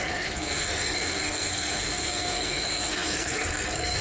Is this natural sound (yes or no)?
no